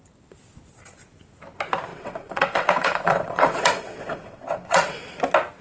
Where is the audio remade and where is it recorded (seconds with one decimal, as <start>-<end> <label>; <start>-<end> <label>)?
0.0-1.9 recorded; 1.9-5.0 remade; 5.0-5.6 recorded